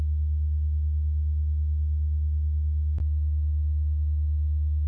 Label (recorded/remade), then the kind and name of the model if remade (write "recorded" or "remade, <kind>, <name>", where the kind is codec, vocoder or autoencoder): recorded